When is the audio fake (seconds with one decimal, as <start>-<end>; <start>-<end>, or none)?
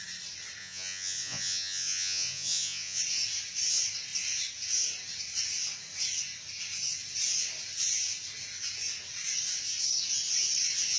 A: 0.6-3.0